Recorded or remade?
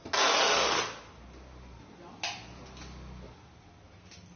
recorded